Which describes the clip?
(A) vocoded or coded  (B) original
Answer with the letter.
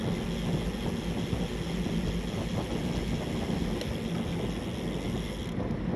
B